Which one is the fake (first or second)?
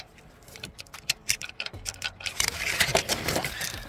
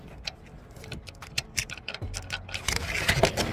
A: first